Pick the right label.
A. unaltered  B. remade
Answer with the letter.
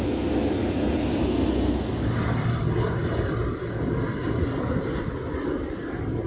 A